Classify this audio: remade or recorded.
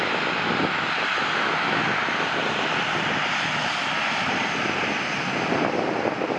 recorded